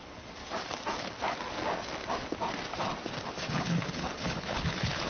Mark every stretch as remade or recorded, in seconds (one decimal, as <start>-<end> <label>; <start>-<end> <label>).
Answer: 0.0-0.4 remade; 0.4-3.5 recorded; 3.5-5.1 remade